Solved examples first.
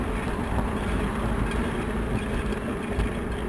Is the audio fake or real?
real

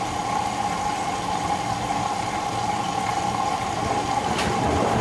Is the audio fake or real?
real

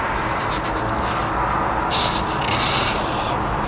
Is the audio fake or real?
real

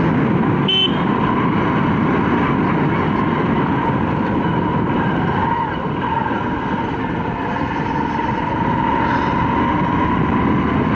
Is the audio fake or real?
real